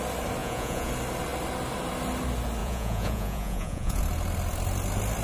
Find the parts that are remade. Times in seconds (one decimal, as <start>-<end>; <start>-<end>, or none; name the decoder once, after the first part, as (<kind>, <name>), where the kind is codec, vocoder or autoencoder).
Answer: 0.4-0.9 (vocoder, Vocos); 2.6-4.0